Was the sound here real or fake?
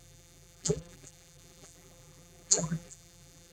fake